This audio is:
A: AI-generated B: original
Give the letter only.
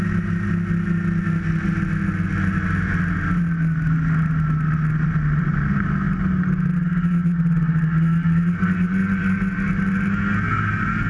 B